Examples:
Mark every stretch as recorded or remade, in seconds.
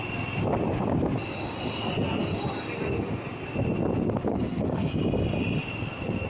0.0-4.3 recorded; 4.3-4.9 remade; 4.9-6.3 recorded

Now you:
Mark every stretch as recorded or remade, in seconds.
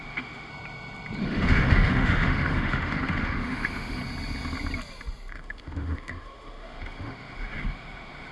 0.0-0.5 remade; 0.5-1.2 recorded; 1.2-4.0 remade; 4.0-5.3 recorded; 5.3-8.3 remade